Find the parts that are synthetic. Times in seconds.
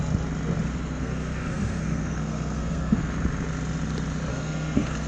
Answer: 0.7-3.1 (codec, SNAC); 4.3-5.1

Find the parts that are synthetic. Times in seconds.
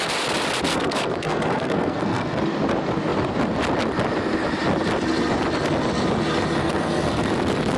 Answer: 0.7-2.4 (codec, SNAC); 6.6-7.2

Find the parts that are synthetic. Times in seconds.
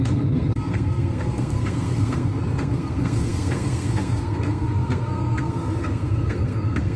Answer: 0.0-7.0 (codec, SNAC)